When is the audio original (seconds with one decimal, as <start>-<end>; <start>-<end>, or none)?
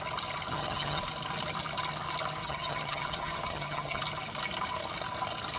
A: 0.0-0.5; 1.0-2.4; 4.0-5.6